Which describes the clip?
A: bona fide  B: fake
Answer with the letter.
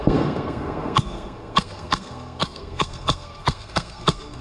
B